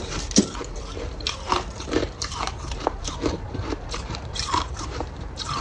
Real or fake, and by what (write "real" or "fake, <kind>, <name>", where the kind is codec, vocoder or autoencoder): fake, vocoder, BigVGAN v2